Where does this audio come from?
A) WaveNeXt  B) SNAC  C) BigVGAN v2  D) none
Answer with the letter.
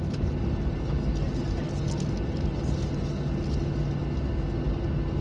D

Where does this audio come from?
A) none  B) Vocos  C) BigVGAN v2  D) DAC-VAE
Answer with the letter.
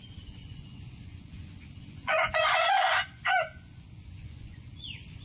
B